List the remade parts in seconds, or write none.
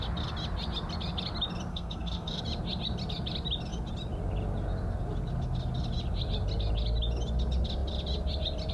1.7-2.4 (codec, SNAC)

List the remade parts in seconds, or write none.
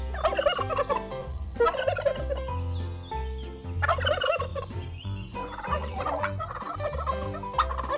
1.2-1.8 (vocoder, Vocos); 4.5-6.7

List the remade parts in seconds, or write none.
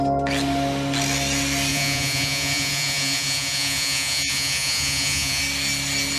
1.7-5.4 (vocoder, Vocos)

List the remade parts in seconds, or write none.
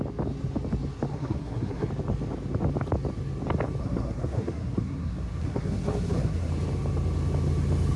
1.1-1.9 (codec, SNAC); 3.8-6.5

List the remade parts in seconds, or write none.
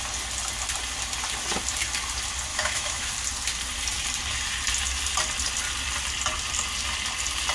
2.5-3.1 (autoencoder, DAC-VAE)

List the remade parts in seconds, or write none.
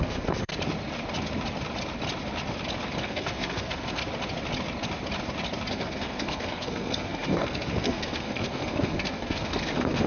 0.0-0.5 (codec, SNAC); 3.0-4.0; 5.7-10.1